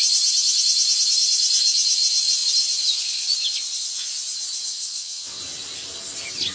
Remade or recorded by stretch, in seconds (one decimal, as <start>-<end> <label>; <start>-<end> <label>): 0.0-4.7 recorded; 4.7-5.4 remade; 5.4-6.5 recorded